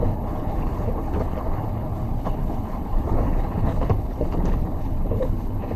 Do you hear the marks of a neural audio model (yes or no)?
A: yes